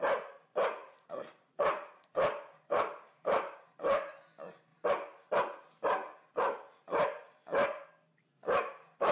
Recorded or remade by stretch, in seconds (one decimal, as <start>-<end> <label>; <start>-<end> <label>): 0.0-0.8 recorded; 0.8-3.6 remade; 3.6-4.7 recorded; 4.7-5.3 remade; 5.3-9.1 recorded